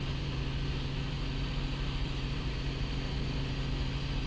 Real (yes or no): yes